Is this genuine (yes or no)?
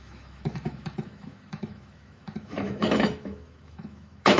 no